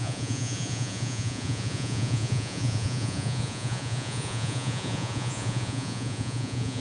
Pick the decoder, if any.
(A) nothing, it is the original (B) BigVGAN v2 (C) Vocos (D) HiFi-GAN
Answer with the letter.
C